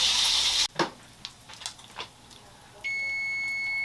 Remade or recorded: recorded